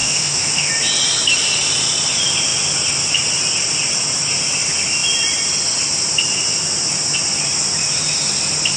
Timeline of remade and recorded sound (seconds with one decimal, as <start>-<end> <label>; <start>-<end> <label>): 0.0-0.7 remade; 0.7-8.8 recorded